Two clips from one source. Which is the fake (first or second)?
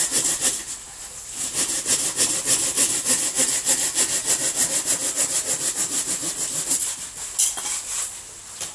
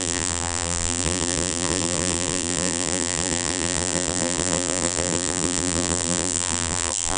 second